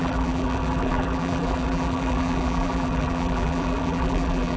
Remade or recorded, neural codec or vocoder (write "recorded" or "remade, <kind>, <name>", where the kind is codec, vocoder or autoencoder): remade, vocoder, BigVGAN v2